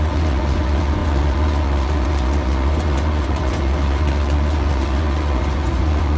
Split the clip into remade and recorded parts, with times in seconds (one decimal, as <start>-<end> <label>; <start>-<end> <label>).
0.0-6.2 remade